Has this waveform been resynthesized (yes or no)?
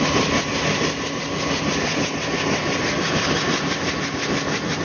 no